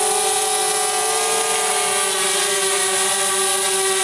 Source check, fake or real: real